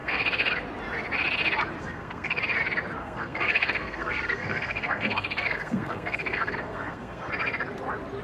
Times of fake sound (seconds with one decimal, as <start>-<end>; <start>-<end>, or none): 0.0-0.5; 1.8-2.4; 3.0-7.3